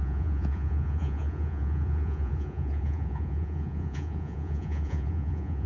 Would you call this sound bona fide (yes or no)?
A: no